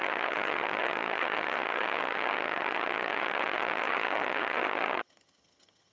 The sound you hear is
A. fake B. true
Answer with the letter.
A